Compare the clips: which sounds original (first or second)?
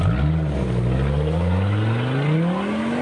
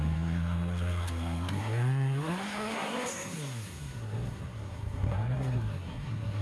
first